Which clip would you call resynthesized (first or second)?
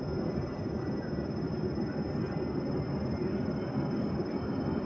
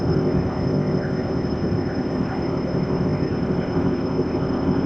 second